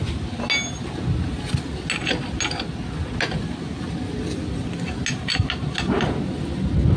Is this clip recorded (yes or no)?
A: yes